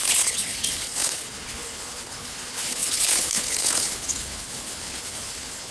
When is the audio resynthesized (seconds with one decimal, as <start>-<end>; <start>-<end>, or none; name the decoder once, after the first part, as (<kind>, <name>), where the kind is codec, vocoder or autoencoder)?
0.0-5.7 (codec, HILCodec)